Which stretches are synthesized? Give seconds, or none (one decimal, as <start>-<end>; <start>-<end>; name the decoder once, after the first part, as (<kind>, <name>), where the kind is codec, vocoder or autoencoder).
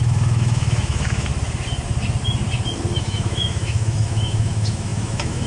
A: 0.0-1.3 (autoencoder, DAC-VAE); 3.0-5.5